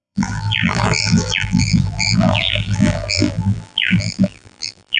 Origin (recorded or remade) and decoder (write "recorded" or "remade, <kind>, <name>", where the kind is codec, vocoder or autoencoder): remade, vocoder, BigVGAN v2